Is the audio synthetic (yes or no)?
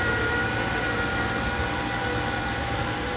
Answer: no